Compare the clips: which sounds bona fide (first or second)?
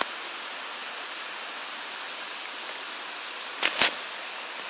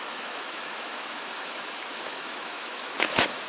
first